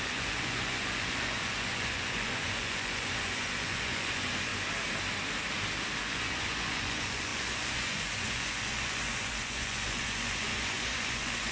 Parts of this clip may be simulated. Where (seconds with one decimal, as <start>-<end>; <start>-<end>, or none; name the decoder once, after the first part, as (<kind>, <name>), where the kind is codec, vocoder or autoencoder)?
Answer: 0.0-4.5 (vocoder, Vocos); 6.0-11.5